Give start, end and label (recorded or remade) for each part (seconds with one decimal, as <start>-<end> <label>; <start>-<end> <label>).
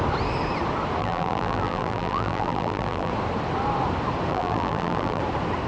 0.0-1.0 recorded; 1.0-3.1 remade; 3.1-4.3 recorded; 4.3-5.2 remade; 5.2-5.7 recorded